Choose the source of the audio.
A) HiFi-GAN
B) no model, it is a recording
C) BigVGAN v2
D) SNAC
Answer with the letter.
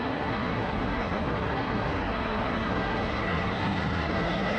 D